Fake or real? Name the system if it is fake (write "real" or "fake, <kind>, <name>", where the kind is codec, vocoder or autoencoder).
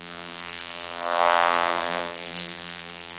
fake, vocoder, BigVGAN v2